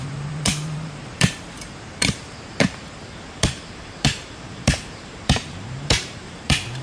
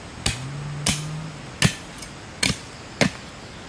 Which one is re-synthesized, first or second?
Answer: first